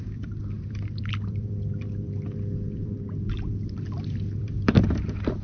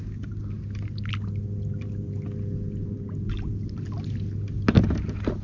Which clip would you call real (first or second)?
second